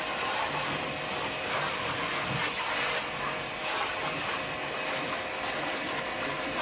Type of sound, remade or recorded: recorded